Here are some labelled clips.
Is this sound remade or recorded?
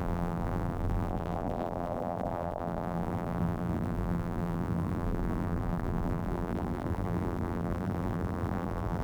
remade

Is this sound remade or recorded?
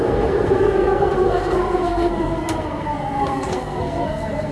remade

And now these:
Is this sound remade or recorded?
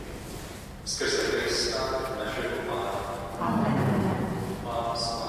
recorded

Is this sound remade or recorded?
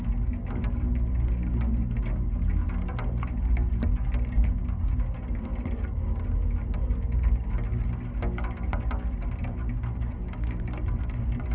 recorded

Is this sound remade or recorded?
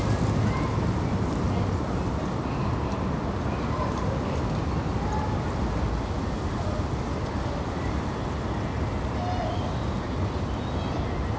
recorded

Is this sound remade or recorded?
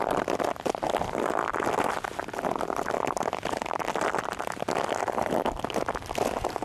recorded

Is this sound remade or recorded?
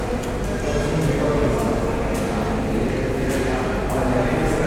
recorded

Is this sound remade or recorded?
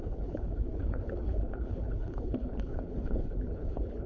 remade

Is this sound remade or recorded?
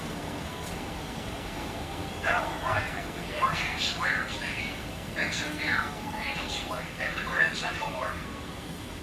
remade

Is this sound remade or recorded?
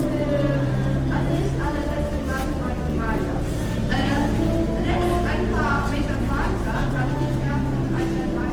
remade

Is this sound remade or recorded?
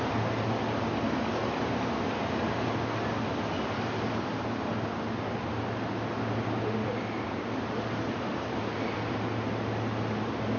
recorded